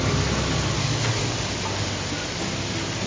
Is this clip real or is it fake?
real